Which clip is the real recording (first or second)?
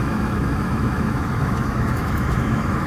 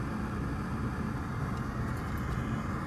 second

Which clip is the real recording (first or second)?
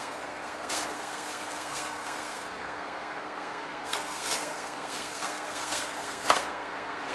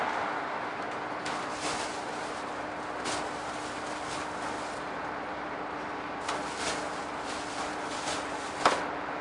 second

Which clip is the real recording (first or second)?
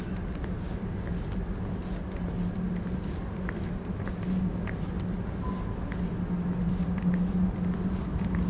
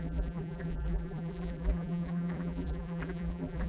first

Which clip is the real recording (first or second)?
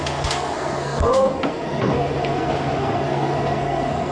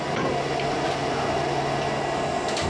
second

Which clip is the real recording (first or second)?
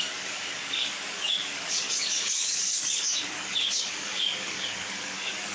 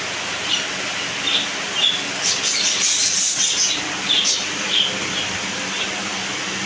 second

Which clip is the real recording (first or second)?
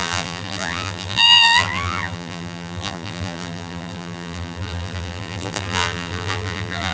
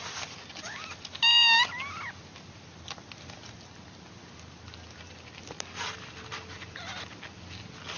second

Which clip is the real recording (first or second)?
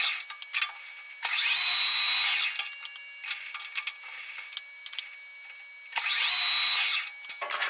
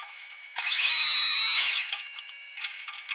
first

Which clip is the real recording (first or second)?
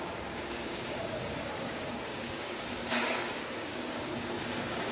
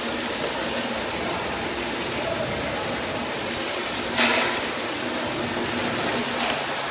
second